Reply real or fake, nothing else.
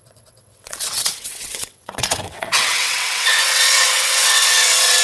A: fake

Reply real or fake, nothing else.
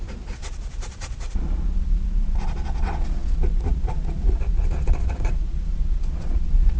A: fake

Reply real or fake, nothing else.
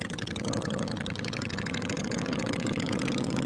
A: fake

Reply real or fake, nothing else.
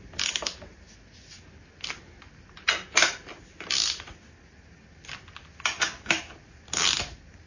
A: real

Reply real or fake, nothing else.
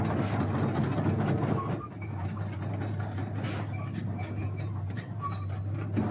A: real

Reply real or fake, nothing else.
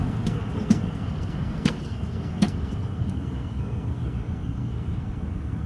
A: fake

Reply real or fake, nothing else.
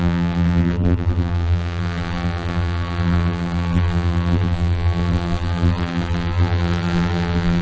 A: fake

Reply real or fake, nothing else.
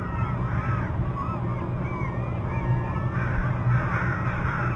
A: real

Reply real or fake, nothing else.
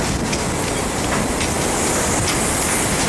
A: real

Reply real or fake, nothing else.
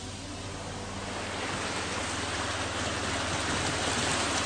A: real